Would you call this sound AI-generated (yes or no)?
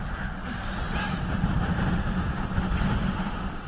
no